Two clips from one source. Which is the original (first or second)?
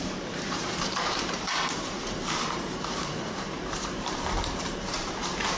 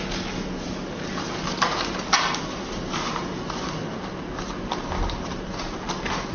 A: second